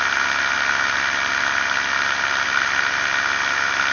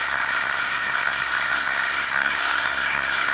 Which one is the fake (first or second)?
second